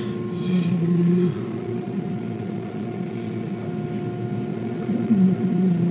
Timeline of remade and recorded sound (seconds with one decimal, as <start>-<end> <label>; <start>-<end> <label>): 0.0-0.5 recorded; 0.5-3.6 remade; 3.6-4.5 recorded; 4.5-5.9 remade